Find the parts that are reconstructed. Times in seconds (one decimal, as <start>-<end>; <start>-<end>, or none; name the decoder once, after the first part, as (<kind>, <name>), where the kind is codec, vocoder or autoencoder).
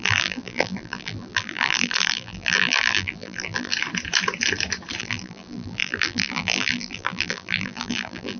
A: 0.0-3.7 (vocoder, BigVGAN v2); 5.0-8.4